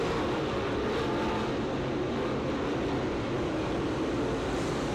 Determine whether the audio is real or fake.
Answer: real